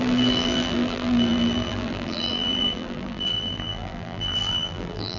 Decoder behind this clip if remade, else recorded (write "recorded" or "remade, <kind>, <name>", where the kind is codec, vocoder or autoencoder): remade, vocoder, BigVGAN v2